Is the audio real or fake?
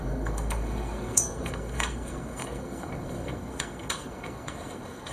fake